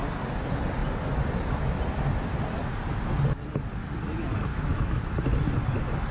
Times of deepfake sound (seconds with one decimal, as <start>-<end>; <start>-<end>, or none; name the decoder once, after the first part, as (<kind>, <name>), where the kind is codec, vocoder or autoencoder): 4.5-5.1 (autoencoder, DAC-VAE)